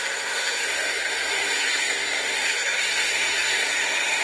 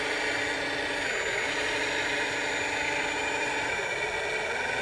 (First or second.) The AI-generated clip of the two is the first